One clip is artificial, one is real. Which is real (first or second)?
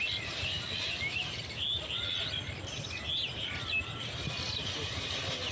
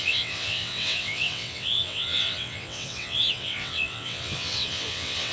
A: first